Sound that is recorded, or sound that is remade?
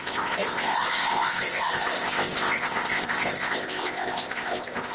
remade